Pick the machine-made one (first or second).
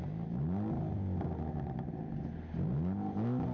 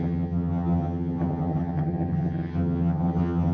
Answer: second